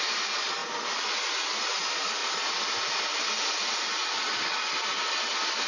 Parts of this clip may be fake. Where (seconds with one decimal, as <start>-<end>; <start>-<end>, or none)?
none